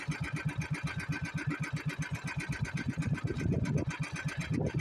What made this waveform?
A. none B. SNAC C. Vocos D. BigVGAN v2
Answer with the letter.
A